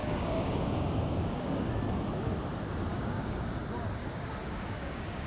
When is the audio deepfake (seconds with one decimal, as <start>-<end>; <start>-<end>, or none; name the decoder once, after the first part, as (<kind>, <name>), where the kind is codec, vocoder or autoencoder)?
0.0-1.7 (codec, DAC); 2.9-3.6; 4.0-5.3